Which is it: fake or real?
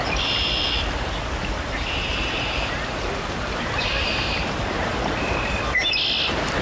fake